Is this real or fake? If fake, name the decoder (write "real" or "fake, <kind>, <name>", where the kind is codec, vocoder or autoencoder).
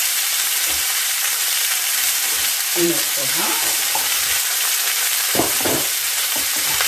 fake, vocoder, BigVGAN v2